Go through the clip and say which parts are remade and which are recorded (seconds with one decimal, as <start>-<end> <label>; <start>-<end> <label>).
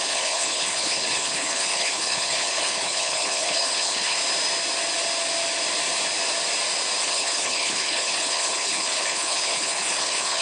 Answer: 0.0-4.2 remade; 4.2-7.0 recorded; 7.0-10.4 remade